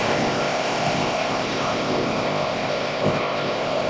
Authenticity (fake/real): fake